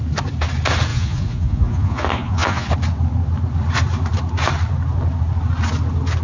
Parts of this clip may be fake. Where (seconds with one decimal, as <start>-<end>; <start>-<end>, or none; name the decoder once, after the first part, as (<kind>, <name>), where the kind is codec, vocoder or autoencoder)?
0.9-2.7 (vocoder, Vocos)